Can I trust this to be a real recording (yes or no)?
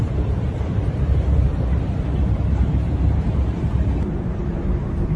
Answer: no